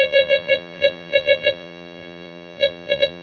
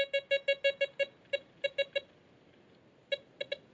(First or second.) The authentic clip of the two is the second